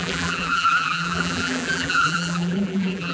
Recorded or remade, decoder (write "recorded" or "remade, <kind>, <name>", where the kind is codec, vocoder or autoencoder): remade, vocoder, BigVGAN v2